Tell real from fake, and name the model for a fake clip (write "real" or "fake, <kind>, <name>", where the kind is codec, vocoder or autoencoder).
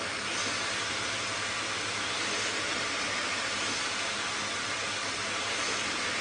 real